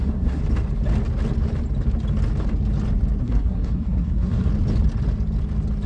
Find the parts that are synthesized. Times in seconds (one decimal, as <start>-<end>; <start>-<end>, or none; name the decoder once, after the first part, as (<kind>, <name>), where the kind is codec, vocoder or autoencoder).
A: 0.0-0.4 (codec, SNAC); 3.2-4.5

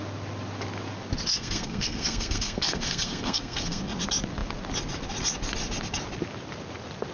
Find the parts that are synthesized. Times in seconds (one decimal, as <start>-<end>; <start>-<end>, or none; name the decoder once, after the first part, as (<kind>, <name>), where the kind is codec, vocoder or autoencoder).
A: 1.3-3.8 (codec, SNAC)

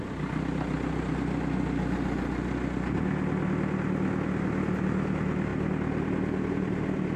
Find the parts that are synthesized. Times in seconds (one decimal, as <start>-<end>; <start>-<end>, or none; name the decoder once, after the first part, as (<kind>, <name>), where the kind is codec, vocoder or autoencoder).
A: none

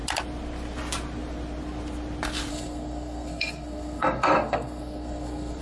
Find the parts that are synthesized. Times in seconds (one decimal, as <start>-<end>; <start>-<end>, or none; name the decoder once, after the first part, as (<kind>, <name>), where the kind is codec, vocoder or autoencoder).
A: 2.5-5.6 (codec, SNAC)

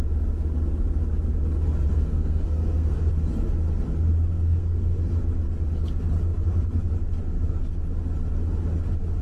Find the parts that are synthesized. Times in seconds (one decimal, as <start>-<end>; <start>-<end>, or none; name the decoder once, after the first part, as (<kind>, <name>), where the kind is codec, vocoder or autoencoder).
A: 1.9-3.1 (codec, SNAC); 4.3-5.0

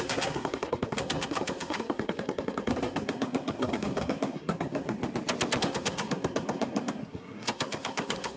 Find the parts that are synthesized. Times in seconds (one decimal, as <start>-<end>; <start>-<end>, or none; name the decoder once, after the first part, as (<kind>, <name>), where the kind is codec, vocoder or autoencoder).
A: 0.0-5.0 (codec, SNAC); 5.6-8.4

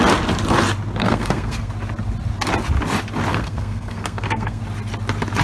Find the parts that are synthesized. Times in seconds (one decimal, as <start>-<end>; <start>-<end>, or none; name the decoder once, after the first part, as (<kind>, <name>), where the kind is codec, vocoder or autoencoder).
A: 1.0-1.7 (codec, SNAC); 3.3-4.6

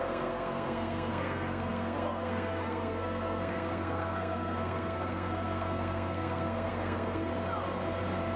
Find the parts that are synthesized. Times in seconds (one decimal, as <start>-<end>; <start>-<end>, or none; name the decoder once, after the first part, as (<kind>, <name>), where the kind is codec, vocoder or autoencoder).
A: 0.0-7.3 (codec, SNAC)